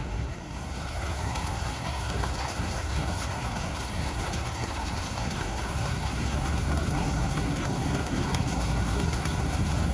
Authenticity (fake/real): fake